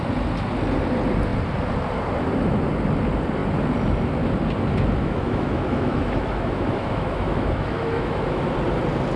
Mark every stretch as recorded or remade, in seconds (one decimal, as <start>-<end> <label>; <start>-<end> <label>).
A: 0.0-5.0 recorded; 5.0-8.4 remade; 8.4-9.2 recorded